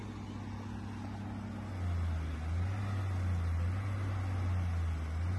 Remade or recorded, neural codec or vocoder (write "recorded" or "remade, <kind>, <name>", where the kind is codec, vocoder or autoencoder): recorded